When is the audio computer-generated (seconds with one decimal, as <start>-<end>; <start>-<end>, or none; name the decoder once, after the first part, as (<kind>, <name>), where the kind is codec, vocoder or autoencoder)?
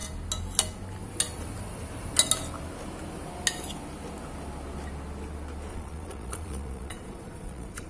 5.7-7.9 (vocoder, Vocos)